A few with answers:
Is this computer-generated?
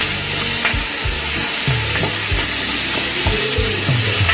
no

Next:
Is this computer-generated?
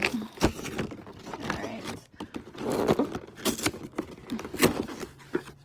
no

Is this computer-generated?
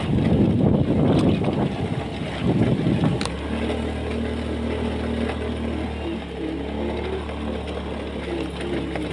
no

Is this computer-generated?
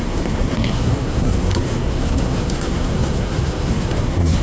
yes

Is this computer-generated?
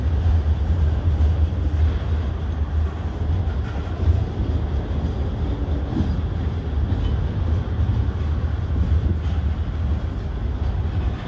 no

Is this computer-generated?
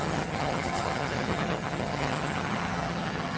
yes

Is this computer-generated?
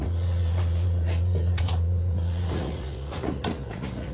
yes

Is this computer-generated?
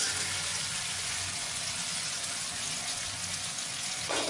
yes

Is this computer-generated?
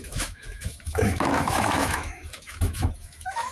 yes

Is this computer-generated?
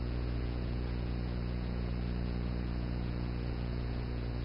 yes